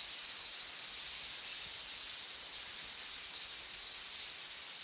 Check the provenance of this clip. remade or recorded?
recorded